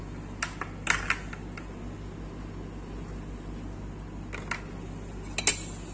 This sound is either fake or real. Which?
real